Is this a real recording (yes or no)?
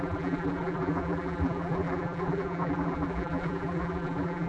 no